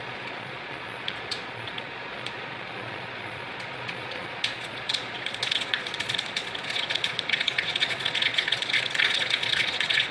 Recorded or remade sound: remade